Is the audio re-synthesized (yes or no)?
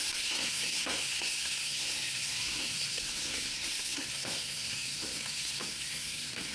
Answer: yes